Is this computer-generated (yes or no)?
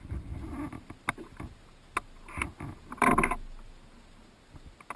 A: no